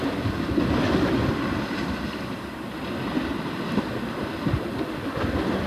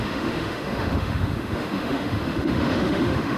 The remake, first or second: second